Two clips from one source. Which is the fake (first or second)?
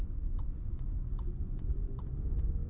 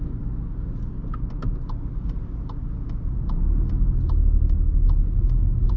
first